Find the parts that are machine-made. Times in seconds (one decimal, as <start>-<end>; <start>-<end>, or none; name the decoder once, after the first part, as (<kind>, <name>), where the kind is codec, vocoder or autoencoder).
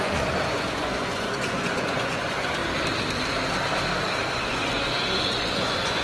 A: 0.0-2.6 (vocoder, Vocos); 4.3-6.0